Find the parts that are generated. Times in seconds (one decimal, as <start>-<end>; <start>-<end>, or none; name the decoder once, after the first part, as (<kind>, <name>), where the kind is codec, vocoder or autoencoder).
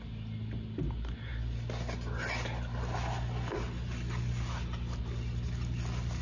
none